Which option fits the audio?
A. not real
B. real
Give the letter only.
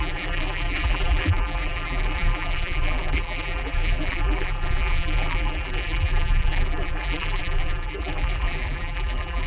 A